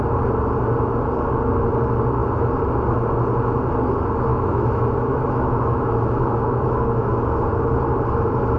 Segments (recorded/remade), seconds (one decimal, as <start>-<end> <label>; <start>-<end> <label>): 0.0-4.3 recorded; 4.3-7.1 remade; 7.1-8.6 recorded